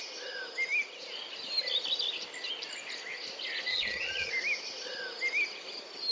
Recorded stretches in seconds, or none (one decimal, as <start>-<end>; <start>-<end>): 0.0-3.7; 4.3-6.1